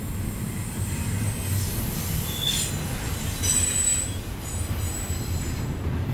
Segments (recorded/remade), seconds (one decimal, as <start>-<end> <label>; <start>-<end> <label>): 0.0-6.1 recorded